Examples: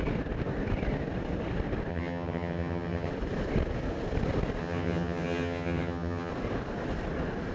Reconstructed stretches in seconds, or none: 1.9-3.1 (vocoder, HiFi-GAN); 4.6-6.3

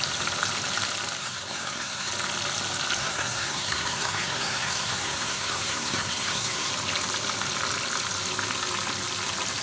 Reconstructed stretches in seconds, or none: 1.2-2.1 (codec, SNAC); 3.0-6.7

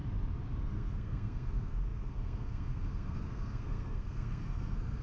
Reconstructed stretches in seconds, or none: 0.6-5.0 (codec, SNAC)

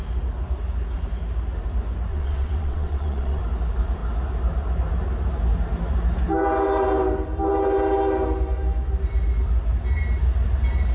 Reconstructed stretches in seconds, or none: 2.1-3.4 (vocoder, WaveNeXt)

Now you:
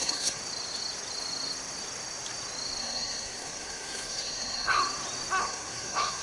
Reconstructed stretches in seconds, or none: 0.0-0.4 (codec, SNAC); 2.8-4.8; 5.4-6.2

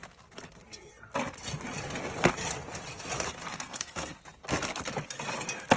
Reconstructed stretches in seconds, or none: 3.5-4.2 (codec, SNAC)

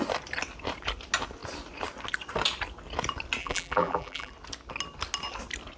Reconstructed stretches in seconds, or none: 3.4-4.3 (vocoder, BigVGAN v2)

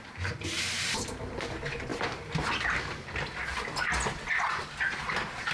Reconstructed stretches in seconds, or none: none